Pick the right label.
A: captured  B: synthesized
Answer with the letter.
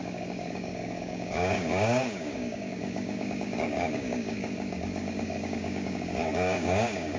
B